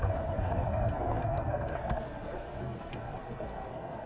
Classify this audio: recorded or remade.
remade